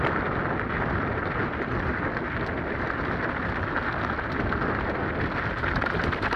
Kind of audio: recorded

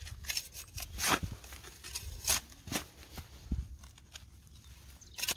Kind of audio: recorded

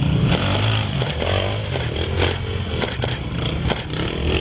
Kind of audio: recorded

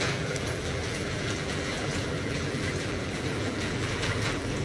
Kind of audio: remade